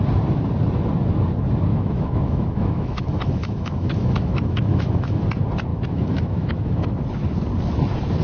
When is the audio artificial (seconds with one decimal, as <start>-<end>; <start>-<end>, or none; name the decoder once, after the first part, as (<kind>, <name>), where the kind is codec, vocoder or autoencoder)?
1.7-5.2 (autoencoder, DAC-VAE); 5.7-7.0